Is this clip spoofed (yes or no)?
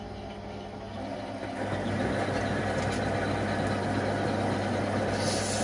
no